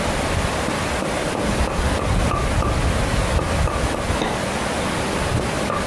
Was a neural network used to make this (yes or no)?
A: no